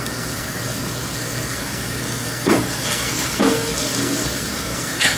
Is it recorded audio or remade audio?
remade